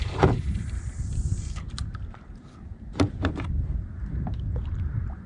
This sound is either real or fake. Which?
fake